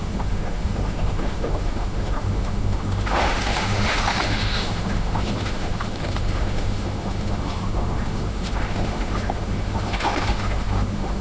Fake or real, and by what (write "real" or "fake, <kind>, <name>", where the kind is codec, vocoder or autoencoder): fake, autoencoder, DAC-VAE